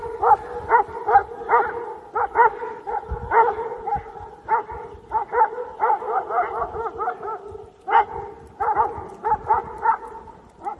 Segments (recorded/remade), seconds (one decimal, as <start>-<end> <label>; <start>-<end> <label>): 0.0-10.8 recorded